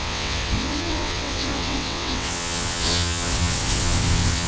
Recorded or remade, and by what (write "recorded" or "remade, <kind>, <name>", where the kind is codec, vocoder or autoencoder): remade, vocoder, WaveNeXt